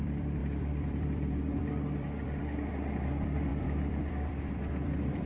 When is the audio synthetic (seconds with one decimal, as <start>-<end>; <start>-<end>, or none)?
0.0-5.3